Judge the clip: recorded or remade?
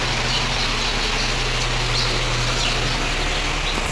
recorded